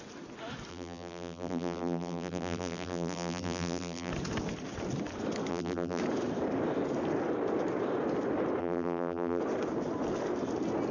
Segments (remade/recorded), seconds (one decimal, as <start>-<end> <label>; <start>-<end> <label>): 0.0-0.7 recorded; 0.7-4.1 remade; 4.1-5.5 recorded; 5.5-6.0 remade; 6.0-8.6 recorded; 8.6-9.4 remade; 9.4-10.9 recorded